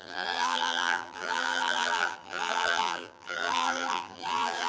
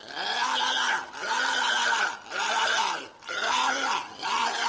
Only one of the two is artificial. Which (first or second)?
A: first